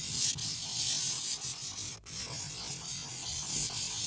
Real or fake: real